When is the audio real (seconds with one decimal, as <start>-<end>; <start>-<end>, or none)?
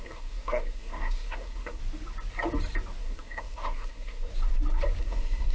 1.8-3.0; 4.3-5.0